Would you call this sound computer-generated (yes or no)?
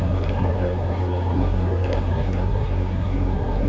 yes